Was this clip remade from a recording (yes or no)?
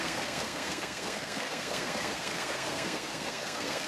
yes